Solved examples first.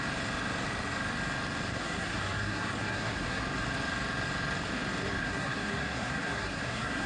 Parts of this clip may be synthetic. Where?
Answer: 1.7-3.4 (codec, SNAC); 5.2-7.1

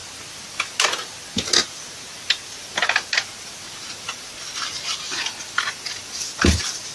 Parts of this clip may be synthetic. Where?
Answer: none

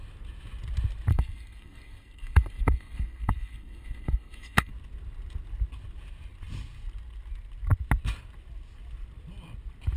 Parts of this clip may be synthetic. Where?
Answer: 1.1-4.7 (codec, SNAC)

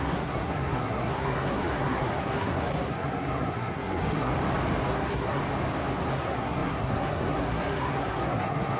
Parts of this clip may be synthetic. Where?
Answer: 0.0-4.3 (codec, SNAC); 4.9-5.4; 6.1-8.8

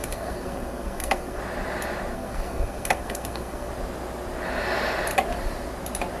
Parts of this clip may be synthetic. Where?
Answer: 0.0-1.4 (codec, SNAC); 2.1-3.7

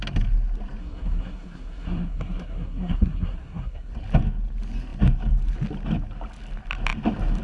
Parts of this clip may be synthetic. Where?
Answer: 0.8-3.9 (codec, SNAC)

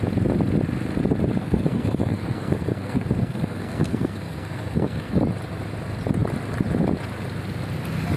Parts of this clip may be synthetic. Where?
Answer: 1.4-5.2 (codec, SNAC)